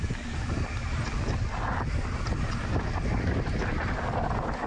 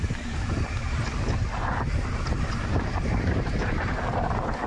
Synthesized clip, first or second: second